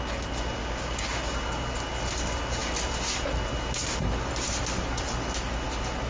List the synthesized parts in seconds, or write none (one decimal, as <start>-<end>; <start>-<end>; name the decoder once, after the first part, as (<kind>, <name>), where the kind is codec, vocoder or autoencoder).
0.6-1.2 (codec, DAC)